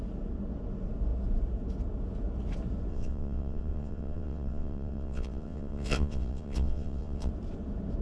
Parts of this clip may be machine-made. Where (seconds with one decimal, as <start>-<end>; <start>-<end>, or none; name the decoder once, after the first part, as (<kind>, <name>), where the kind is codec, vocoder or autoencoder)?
2.9-7.3 (vocoder, WaveNeXt)